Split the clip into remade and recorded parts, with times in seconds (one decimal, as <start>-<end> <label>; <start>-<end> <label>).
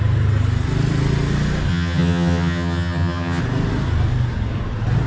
0.0-1.7 recorded; 1.7-3.4 remade; 3.4-5.1 recorded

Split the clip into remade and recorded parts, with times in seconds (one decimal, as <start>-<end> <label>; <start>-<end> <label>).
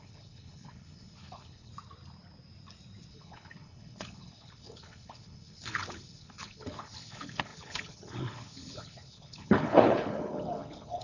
0.0-1.7 remade; 1.7-3.1 recorded; 3.1-11.0 remade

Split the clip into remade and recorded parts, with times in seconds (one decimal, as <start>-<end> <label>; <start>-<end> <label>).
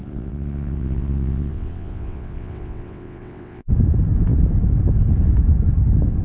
0.0-3.7 remade; 3.7-6.2 recorded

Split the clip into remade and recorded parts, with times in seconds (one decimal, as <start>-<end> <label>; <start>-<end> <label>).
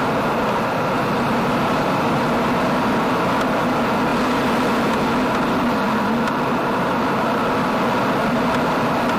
0.0-1.5 recorded; 1.5-2.1 remade; 2.1-9.2 recorded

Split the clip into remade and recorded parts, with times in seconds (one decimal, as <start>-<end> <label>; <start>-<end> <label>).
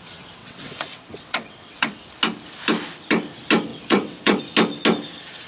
0.0-0.4 recorded; 0.4-2.0 remade; 2.0-3.7 recorded; 3.7-4.4 remade; 4.4-5.5 recorded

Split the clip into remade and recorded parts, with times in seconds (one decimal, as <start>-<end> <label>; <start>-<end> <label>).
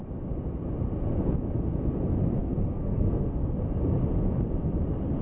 0.0-2.4 recorded; 2.4-3.6 remade; 3.6-5.2 recorded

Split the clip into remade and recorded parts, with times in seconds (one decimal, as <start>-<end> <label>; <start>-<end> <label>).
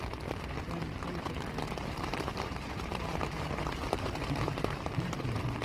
0.0-2.1 recorded; 2.1-5.6 remade